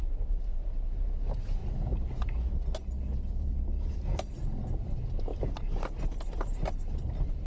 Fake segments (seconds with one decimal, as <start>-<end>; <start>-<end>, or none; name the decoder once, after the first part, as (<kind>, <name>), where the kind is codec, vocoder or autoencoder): 1.6-2.5 (vocoder, BigVGAN v2); 3.1-4.4; 5.3-7.5

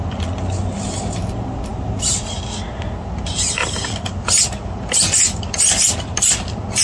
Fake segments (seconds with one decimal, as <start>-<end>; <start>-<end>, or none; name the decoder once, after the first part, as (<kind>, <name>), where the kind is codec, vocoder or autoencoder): none